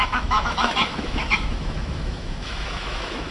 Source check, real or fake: fake